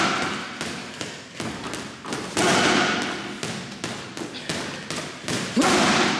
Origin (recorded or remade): recorded